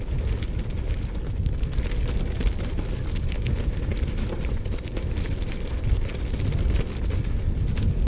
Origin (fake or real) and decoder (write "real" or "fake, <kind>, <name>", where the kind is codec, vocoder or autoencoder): real